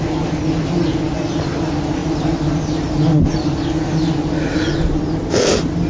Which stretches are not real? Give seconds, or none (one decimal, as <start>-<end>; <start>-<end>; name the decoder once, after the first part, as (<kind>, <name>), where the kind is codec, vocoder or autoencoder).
none